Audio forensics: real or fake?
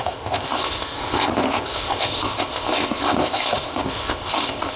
fake